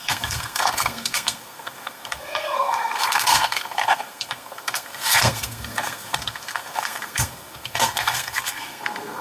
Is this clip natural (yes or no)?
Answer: no